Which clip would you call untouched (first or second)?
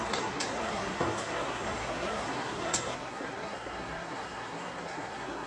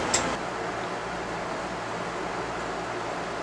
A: second